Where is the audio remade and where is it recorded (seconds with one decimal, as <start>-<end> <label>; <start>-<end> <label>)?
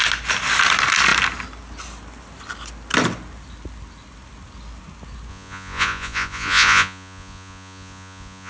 0.0-5.3 recorded; 5.3-8.5 remade